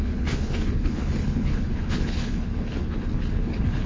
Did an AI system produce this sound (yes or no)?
yes